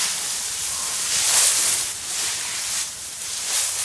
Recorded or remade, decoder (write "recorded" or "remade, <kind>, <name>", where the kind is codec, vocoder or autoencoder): recorded